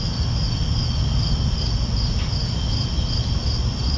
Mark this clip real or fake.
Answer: real